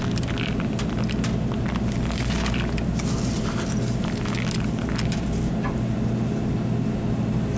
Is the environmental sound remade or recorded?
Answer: recorded